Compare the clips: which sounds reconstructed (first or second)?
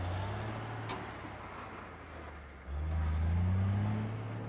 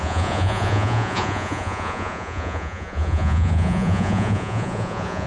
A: second